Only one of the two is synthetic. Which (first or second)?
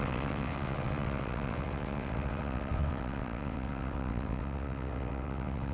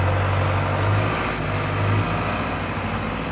first